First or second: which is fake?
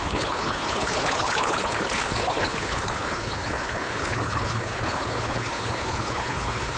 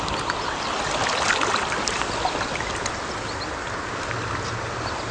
first